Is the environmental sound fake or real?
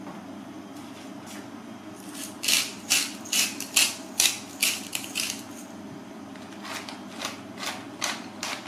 real